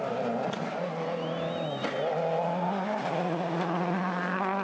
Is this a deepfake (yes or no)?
no